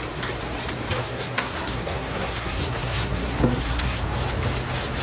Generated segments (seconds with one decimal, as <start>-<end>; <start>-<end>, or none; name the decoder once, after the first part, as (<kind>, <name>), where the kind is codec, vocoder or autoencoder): 1.0-4.0 (codec, SNAC)